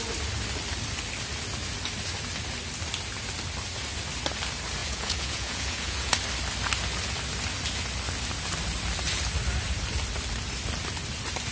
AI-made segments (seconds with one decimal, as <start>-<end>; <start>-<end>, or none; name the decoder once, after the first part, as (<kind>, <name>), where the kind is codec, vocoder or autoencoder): 4.8-6.1 (vocoder, Vocos)